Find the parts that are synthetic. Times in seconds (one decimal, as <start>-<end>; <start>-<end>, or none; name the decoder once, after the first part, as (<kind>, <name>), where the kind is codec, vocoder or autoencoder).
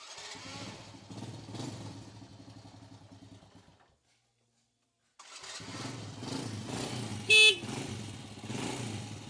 none